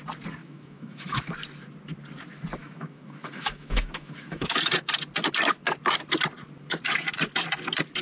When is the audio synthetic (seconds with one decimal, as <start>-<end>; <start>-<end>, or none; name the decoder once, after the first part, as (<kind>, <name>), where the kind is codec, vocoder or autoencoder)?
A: 0.4-1.2 (autoencoder, DAC-VAE); 2.6-4.7